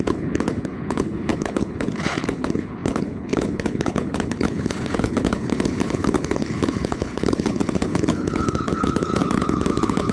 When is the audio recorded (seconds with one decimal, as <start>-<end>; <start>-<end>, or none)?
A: none